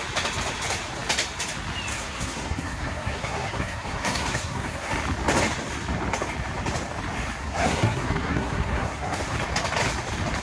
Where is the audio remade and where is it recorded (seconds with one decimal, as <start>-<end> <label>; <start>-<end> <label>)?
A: 0.0-1.9 recorded; 1.9-4.9 remade; 4.9-7.4 recorded; 7.4-9.2 remade; 9.2-10.4 recorded